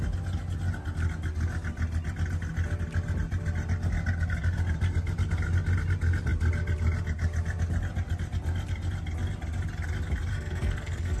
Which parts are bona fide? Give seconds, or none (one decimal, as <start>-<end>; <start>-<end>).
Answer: 0.0-10.3